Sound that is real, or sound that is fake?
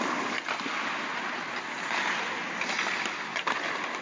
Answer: real